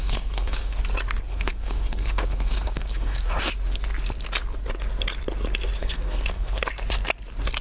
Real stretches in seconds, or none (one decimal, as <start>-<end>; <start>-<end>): 0.8-1.3; 3.3-5.8; 6.6-7.6